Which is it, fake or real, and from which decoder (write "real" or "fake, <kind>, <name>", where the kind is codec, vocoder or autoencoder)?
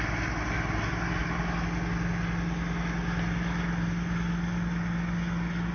real